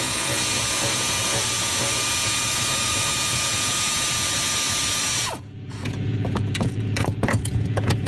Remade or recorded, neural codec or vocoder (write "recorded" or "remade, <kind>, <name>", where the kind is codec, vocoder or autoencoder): remade, vocoder, Vocos